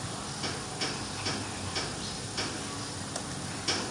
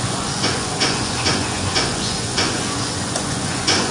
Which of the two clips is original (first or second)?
first